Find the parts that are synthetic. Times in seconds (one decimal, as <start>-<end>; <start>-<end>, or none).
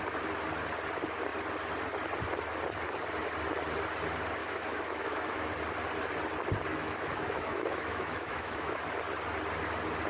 4.4-5.5; 6.7-8.8